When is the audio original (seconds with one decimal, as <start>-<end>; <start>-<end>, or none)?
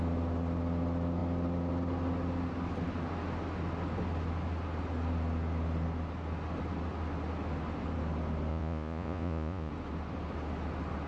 0.0-8.5; 9.7-11.1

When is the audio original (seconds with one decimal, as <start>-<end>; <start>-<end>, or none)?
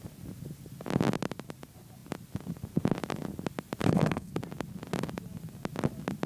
0.0-3.8; 4.3-6.3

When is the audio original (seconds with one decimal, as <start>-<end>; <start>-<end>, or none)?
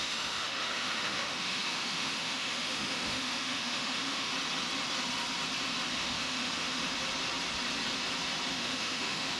4.3-5.9; 6.8-8.5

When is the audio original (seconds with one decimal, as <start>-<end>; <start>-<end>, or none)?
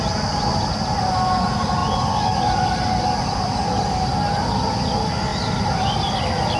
0.0-1.8; 4.8-5.3; 5.8-6.6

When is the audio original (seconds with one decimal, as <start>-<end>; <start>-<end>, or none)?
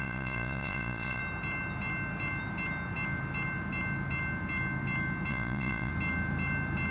1.2-5.3; 5.9-6.9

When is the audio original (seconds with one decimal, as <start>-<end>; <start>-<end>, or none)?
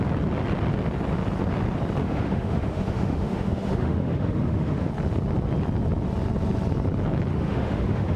0.0-2.0; 4.9-7.3